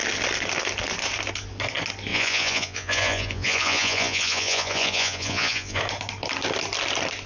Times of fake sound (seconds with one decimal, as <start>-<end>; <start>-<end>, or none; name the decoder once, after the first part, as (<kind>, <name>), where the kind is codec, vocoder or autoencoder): 2.1-5.8 (vocoder, Vocos)